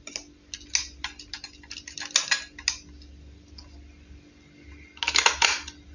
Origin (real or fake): real